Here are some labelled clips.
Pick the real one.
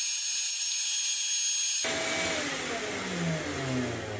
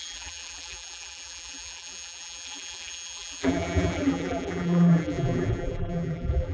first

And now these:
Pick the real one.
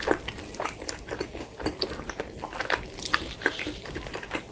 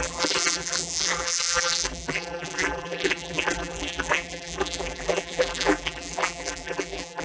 first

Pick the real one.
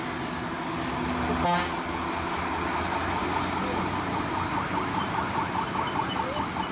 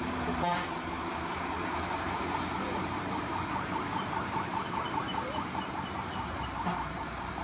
first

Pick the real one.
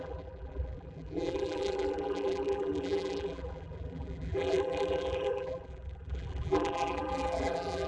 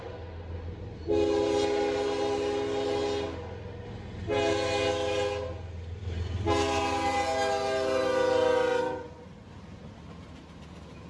second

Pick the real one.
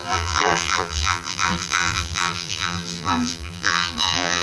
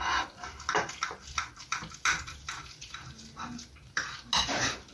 second